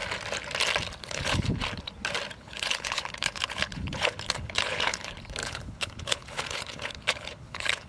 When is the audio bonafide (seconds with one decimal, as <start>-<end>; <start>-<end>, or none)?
0.0-1.0; 1.6-2.4